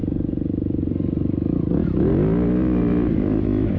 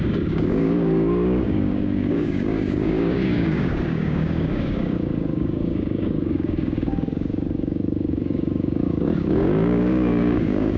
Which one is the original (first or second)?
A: first